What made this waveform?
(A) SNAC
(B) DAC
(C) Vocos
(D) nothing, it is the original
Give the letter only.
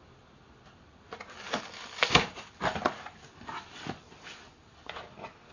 D